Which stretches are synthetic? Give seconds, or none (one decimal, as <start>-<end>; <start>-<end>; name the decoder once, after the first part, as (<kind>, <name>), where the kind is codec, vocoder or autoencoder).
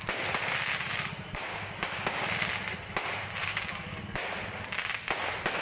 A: 1.5-2.5 (codec, DAC); 3.4-4.0